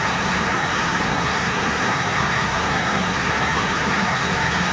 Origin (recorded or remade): remade